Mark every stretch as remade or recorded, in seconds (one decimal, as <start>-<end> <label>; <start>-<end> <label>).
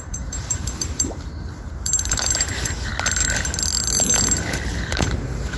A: 0.0-2.9 remade; 2.9-4.7 recorded; 4.7-5.6 remade